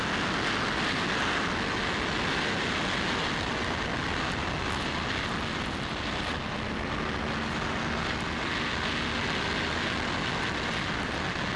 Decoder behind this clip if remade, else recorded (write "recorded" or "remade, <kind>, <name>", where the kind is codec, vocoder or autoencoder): recorded